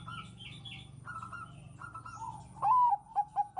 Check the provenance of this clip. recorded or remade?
recorded